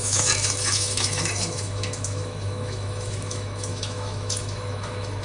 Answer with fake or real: fake